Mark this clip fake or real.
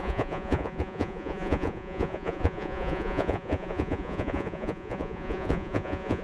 fake